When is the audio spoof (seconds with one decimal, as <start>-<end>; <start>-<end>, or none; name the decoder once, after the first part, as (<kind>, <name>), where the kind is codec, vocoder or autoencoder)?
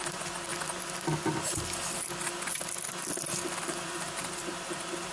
0.0-0.5 (vocoder, BigVGAN v2); 3.6-5.1